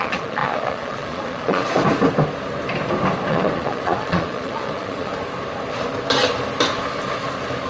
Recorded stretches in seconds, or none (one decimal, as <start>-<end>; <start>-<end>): 1.8-3.3; 5.1-7.7